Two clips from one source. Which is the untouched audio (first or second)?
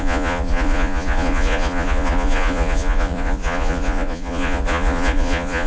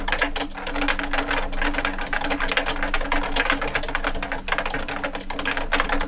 second